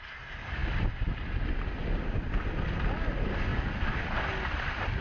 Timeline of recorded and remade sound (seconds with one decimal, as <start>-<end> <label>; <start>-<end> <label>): 0.0-5.0 recorded